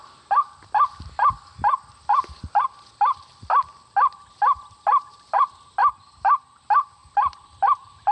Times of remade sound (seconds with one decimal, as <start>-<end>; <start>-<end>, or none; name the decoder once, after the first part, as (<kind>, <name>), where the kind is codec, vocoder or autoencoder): 3.6-5.4 (vocoder, BigVGAN v2); 7.0-8.1